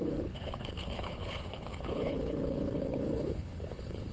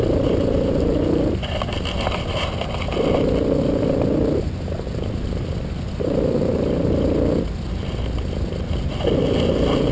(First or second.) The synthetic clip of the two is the first